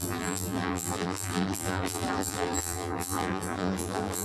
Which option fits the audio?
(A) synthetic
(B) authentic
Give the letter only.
A